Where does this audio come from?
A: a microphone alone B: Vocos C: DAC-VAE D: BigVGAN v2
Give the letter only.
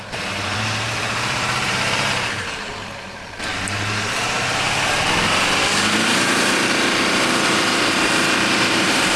D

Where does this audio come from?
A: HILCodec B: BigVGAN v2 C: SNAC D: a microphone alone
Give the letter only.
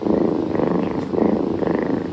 D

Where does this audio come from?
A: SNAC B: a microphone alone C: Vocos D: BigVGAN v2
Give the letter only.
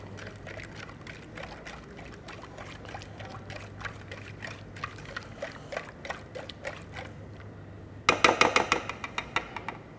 B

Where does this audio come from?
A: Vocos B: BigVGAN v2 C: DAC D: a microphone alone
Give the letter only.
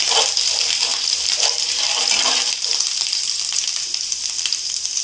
B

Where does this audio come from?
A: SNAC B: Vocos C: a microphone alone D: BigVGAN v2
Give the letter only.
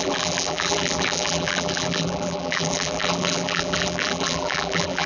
D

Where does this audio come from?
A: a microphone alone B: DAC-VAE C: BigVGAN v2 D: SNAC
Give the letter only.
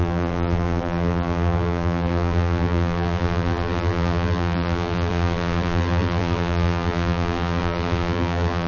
C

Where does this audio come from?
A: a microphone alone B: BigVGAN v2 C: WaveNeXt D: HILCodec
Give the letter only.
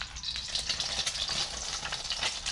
A